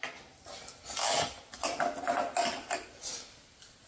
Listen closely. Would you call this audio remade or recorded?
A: recorded